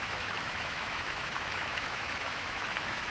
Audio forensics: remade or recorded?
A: remade